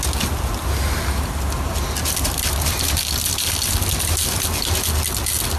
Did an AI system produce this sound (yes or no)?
no